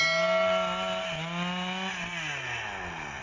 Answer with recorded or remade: recorded